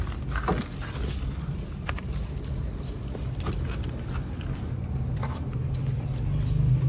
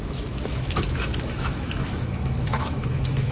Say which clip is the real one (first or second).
first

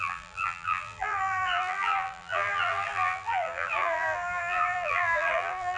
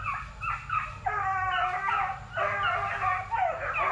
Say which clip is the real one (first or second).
second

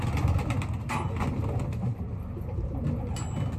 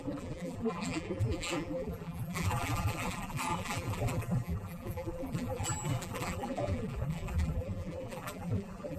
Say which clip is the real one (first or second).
first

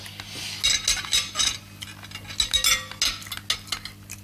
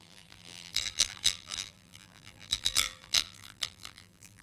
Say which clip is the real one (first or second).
first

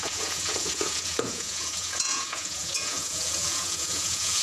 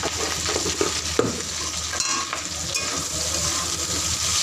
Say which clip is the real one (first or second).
second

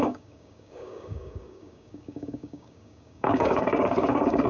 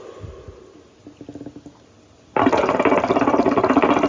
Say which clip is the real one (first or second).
second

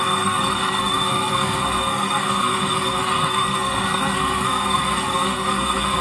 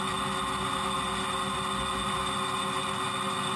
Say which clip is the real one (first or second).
second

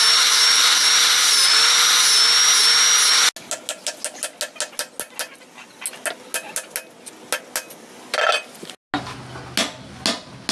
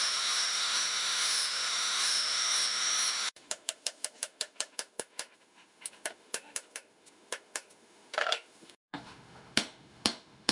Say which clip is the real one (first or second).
first